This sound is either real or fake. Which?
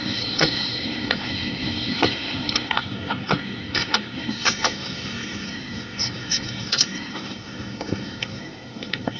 fake